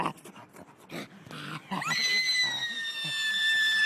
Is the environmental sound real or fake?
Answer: real